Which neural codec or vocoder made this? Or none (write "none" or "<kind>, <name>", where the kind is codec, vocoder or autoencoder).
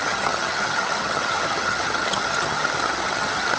vocoder, HiFi-GAN